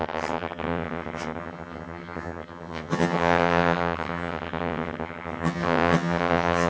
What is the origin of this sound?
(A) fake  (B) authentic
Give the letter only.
A